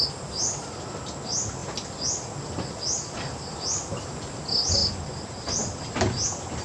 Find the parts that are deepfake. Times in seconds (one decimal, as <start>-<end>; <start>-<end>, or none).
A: none